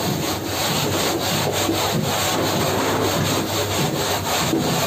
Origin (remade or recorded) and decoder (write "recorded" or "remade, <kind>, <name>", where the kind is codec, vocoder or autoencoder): recorded